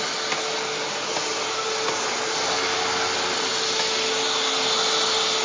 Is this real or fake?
real